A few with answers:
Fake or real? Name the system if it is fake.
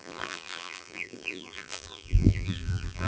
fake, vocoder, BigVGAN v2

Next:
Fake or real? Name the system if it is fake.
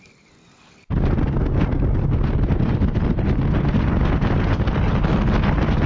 real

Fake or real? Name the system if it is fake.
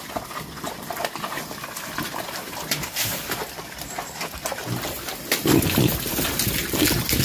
fake, vocoder, BigVGAN v2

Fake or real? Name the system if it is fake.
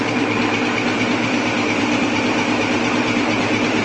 fake, vocoder, BigVGAN v2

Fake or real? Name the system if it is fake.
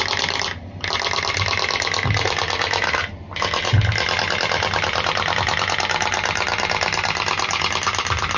real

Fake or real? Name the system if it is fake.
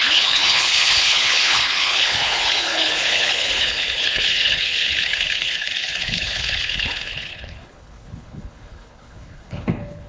fake, codec, HILCodec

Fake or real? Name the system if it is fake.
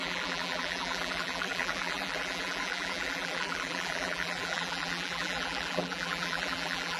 fake, vocoder, BigVGAN v2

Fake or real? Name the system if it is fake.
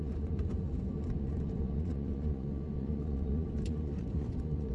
fake, vocoder, Vocos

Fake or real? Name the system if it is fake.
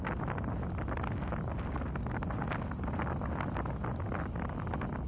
real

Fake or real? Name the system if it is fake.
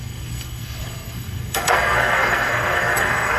fake, codec, SNAC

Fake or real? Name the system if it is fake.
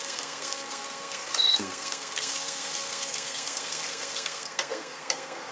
fake, codec, SNAC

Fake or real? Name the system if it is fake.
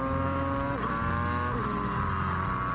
real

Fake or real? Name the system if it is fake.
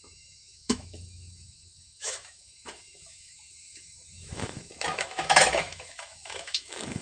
fake, autoencoder, DAC-VAE